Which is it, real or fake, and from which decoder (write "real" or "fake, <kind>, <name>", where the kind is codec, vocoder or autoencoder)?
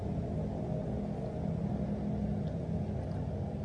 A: real